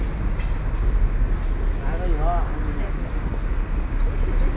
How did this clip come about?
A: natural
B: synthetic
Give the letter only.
A